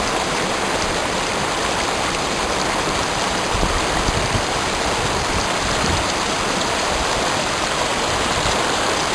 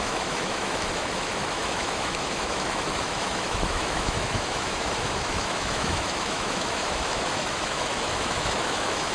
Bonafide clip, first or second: first